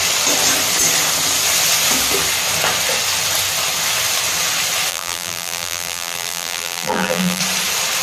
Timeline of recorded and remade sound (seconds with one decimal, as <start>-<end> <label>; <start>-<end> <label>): 0.0-4.9 recorded; 4.9-7.4 remade; 7.4-8.0 recorded